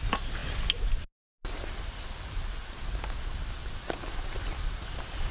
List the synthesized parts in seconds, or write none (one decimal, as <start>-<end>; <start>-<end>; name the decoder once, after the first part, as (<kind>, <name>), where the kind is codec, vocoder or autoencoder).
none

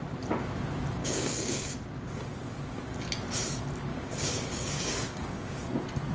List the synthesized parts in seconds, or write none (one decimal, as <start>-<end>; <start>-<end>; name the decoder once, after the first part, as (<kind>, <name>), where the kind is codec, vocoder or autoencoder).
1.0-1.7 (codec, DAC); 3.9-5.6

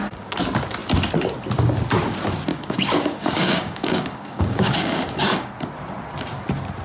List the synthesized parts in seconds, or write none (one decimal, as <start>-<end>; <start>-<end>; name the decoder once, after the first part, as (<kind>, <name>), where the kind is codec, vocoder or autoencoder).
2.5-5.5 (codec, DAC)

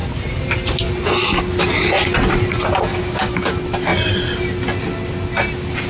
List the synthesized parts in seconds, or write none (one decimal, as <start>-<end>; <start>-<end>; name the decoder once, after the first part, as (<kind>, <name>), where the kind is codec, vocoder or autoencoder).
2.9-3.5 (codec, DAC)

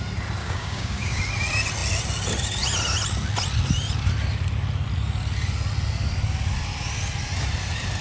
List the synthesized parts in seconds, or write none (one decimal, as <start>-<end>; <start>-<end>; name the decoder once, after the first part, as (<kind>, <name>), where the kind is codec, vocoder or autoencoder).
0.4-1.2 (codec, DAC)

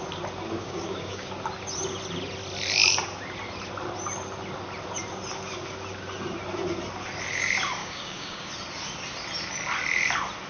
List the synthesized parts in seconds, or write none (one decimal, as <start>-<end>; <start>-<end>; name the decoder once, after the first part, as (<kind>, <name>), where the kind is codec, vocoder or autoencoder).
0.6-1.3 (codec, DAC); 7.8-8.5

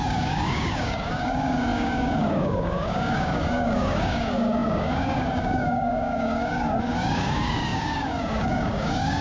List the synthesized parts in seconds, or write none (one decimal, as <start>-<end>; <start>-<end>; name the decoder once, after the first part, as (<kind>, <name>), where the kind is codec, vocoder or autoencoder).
0.0-9.2 (codec, DAC)